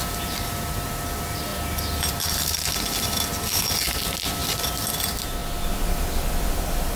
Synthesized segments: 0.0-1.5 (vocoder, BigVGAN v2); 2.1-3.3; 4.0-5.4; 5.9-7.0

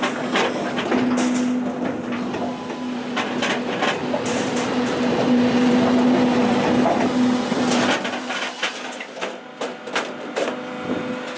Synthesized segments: 4.0-5.7 (vocoder, BigVGAN v2)

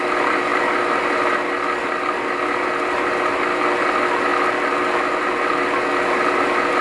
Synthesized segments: 0.5-1.0 (vocoder, BigVGAN v2)

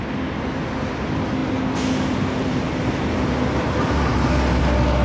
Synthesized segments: none